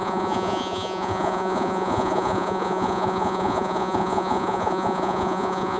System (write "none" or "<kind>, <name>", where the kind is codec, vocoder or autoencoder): vocoder, Vocos